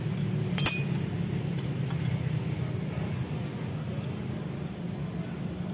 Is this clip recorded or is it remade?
recorded